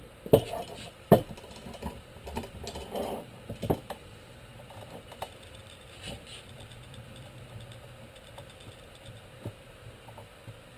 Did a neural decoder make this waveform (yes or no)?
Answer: yes